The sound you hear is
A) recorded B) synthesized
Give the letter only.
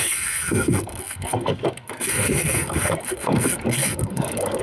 B